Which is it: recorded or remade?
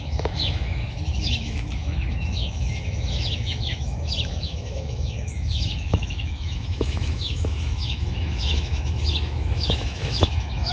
remade